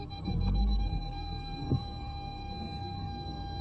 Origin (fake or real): fake